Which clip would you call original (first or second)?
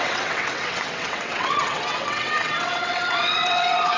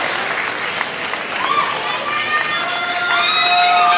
second